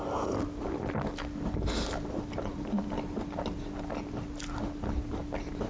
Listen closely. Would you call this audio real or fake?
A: real